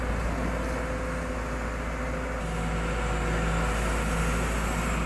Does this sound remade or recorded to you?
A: recorded